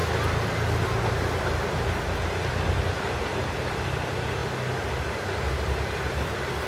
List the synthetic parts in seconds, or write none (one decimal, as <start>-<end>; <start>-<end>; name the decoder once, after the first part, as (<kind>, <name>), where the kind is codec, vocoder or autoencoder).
2.5-4.4 (vocoder, BigVGAN v2); 5.5-6.7

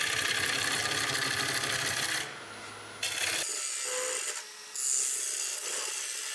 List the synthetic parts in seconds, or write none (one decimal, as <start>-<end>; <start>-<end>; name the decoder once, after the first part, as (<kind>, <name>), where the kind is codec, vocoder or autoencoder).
none

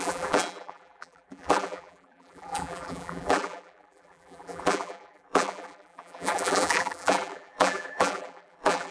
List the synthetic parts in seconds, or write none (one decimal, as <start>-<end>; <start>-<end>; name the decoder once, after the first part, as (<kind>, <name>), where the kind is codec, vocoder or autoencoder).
0.0-8.9 (vocoder, BigVGAN v2)

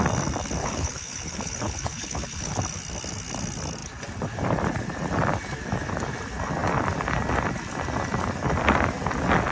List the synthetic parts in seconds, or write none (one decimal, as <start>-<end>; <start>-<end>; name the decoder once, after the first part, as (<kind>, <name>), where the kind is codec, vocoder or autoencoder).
0.6-2.6 (codec, HILCodec)

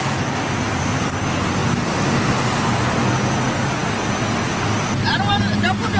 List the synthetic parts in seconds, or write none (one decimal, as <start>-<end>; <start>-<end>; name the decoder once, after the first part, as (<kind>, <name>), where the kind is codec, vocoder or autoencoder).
none

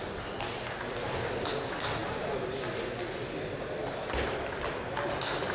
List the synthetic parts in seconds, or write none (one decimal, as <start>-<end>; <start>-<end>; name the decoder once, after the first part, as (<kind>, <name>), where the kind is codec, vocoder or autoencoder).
none

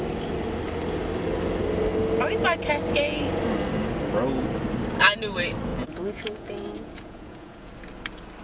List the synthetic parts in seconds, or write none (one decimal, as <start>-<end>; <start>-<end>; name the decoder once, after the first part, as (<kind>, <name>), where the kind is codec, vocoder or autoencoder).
5.7-7.7 (vocoder, Vocos)